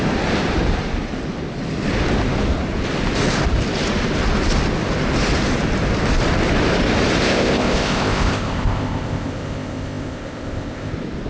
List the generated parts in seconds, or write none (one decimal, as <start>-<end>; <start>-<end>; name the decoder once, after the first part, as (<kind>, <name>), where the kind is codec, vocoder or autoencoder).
7.2-10.9 (codec, ZipCodec)